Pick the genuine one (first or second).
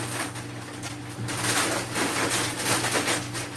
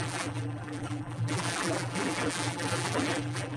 first